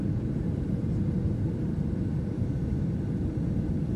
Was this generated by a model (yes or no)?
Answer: yes